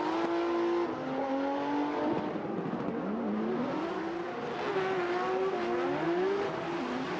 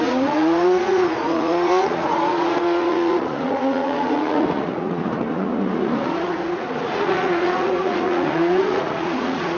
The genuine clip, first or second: first